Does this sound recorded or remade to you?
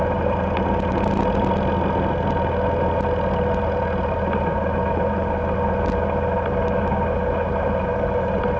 recorded